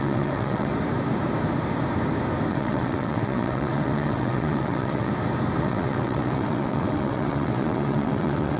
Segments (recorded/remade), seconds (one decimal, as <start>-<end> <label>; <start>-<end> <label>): 0.0-0.7 remade; 0.7-2.5 recorded; 2.5-5.1 remade; 5.1-5.6 recorded; 5.6-8.6 remade